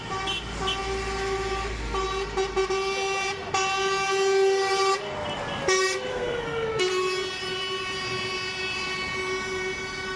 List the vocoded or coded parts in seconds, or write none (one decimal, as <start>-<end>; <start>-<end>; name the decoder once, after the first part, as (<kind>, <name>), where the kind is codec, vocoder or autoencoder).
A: 6.1-6.8 (codec, SNAC)